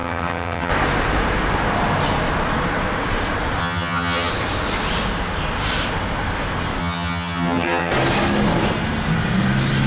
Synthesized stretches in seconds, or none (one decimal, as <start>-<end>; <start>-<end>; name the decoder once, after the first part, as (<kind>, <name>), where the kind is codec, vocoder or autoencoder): 0.0-0.7 (vocoder, HiFi-GAN); 3.6-4.3; 6.8-7.9